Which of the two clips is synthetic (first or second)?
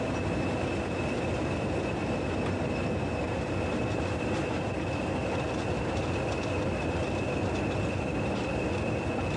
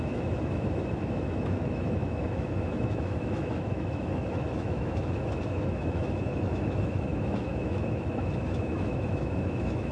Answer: second